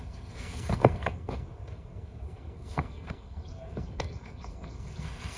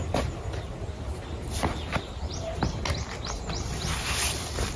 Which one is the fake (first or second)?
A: first